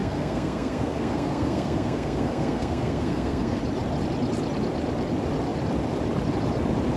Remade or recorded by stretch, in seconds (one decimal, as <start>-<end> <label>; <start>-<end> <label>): 0.0-3.6 remade; 3.6-7.0 recorded